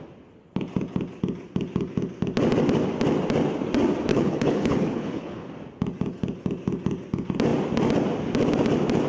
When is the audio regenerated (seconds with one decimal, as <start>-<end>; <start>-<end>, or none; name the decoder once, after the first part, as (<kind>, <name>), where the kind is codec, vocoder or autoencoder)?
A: 4.1-5.5 (codec, HILCodec)